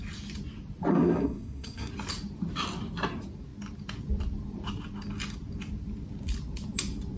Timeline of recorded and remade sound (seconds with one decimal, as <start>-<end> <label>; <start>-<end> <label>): 0.0-0.9 recorded; 0.9-1.9 remade; 1.9-7.2 recorded